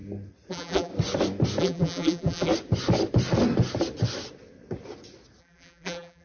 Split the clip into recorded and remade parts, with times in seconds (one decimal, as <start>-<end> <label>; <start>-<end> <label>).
0.0-0.5 recorded; 0.5-0.9 remade; 0.9-1.6 recorded; 1.6-2.5 remade; 2.5-5.4 recorded; 5.4-6.2 remade